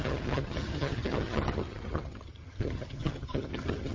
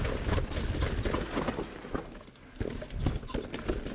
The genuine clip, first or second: second